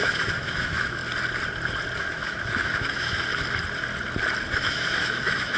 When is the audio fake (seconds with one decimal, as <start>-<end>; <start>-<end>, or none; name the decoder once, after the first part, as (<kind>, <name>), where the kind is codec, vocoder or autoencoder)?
0.0-1.0 (autoencoder, DAC-VAE); 2.0-3.3; 4.5-5.6